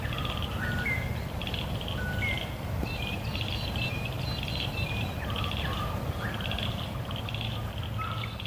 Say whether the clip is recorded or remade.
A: recorded